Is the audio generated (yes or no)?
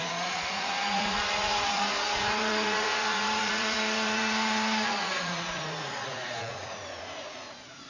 yes